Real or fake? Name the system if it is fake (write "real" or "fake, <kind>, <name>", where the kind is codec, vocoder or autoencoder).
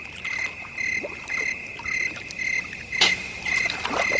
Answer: real